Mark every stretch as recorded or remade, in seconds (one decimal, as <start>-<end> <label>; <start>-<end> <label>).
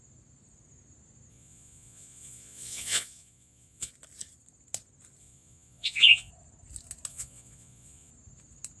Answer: 0.0-1.3 recorded; 1.3-3.9 remade; 3.9-5.2 recorded; 5.2-6.3 remade; 6.3-7.1 recorded; 7.1-8.1 remade; 8.1-8.8 recorded